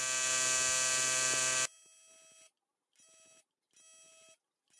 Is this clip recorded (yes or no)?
yes